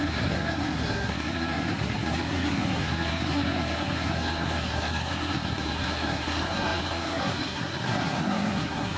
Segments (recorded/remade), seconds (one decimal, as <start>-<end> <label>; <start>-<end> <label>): 0.0-9.0 remade